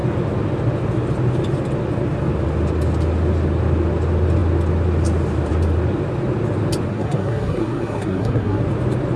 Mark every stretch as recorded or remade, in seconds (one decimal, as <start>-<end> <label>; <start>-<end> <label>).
0.0-6.9 recorded; 6.9-8.6 remade; 8.6-9.2 recorded